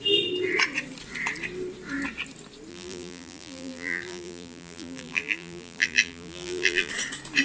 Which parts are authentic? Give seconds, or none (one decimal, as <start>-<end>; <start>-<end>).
0.0-2.7; 6.9-7.4